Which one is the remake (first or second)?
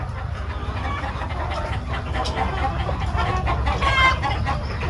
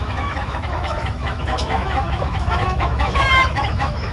second